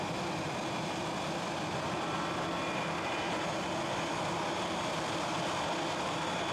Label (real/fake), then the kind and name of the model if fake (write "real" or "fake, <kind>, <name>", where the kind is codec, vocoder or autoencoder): real